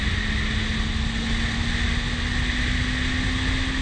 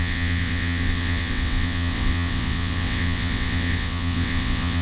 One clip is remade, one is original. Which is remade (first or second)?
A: second